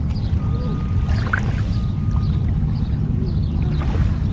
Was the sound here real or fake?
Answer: real